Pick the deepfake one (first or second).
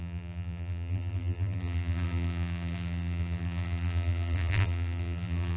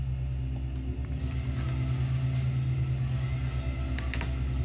first